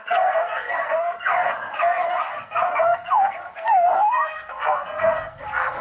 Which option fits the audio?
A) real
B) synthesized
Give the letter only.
B